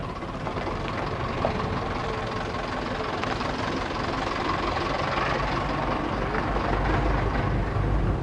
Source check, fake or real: real